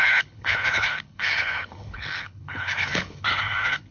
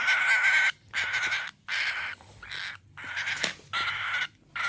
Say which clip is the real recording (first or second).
second